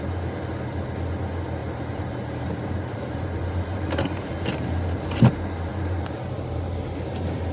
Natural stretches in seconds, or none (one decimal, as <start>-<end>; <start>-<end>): 0.0-1.6; 4.3-5.7; 6.7-7.5